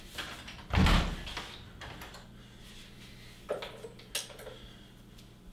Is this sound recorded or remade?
recorded